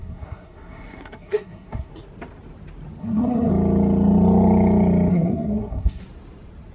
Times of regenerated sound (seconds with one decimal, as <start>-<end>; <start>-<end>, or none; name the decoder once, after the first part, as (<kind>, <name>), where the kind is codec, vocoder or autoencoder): 0.0-1.9 (codec, SNAC); 3.0-3.5; 5.1-6.0

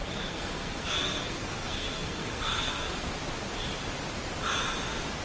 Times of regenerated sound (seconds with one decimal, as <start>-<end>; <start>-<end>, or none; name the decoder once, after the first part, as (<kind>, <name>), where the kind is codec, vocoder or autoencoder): 0.0-3.1 (codec, SNAC)

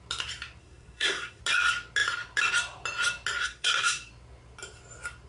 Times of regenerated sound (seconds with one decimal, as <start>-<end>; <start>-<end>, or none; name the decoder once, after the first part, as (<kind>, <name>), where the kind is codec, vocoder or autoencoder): 0.6-1.4 (codec, SNAC); 3.4-4.1

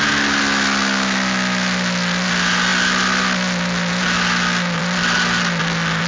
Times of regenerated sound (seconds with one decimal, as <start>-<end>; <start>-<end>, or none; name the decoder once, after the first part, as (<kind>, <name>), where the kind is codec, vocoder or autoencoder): none

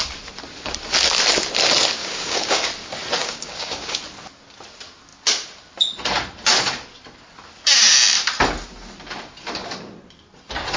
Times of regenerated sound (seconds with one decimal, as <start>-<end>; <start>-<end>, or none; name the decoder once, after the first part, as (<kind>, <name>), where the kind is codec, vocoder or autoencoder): 2.0-2.7 (codec, DAC); 3.2-4.0

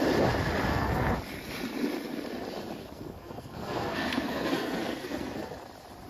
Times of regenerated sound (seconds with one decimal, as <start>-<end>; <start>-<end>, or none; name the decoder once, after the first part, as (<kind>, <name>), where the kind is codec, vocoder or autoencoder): 0.7-1.2 (codec, SNAC); 2.8-5.5

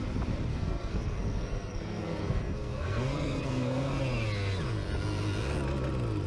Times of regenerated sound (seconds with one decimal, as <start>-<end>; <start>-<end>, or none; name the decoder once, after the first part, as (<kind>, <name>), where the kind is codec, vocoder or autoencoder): 0.5-4.0 (codec, SNAC)

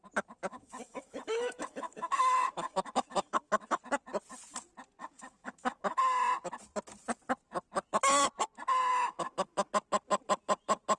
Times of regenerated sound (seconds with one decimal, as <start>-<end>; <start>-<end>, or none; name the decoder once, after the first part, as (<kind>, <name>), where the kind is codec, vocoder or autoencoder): 0.5-3.8 (autoencoder, DAC-VAE); 5.0-6.0; 8.9-9.7